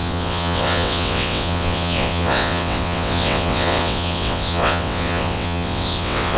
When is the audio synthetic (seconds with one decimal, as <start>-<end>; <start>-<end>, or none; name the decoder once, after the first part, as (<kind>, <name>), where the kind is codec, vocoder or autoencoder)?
0.0-6.4 (vocoder, WaveNeXt)